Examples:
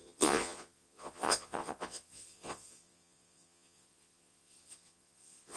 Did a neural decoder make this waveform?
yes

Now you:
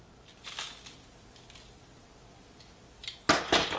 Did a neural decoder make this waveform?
no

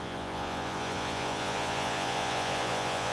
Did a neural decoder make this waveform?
yes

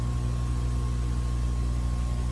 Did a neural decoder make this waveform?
no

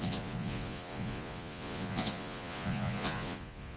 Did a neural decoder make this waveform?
yes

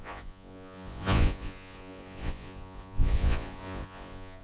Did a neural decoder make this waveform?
yes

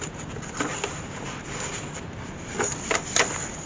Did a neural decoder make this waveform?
no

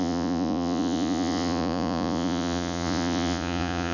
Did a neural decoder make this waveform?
yes